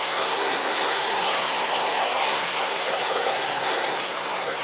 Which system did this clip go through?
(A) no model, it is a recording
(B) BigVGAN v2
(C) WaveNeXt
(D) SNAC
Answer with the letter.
D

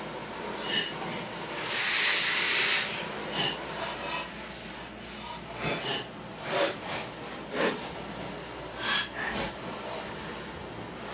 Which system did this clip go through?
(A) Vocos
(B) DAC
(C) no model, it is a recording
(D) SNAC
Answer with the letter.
C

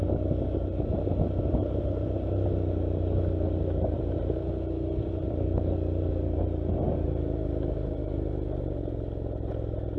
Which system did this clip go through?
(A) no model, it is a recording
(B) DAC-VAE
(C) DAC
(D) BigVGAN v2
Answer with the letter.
A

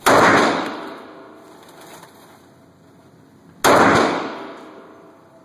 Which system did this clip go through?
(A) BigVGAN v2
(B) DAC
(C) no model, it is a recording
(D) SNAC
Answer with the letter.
C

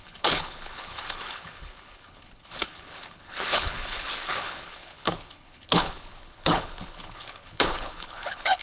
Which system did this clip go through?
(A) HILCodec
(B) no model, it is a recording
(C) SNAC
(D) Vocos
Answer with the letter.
A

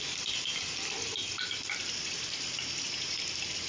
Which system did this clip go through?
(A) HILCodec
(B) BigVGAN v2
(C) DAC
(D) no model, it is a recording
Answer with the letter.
B